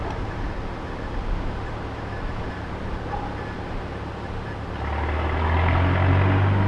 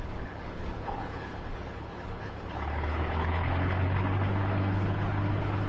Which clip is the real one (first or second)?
first